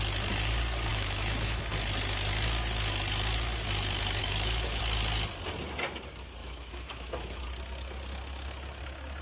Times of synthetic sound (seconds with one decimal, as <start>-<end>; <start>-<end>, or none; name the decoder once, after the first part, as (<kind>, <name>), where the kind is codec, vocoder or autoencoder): 0.9-1.6 (autoencoder, DAC-VAE); 4.2-4.8; 6.4-7.4